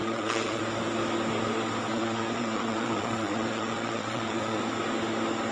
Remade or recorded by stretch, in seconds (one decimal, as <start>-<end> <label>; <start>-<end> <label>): 0.0-0.6 remade; 0.6-1.9 recorded; 1.9-4.6 remade; 4.6-5.5 recorded